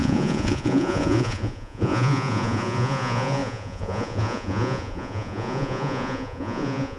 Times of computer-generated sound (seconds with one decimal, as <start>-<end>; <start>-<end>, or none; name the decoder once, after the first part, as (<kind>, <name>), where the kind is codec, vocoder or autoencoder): 0.0-7.0 (vocoder, Vocos)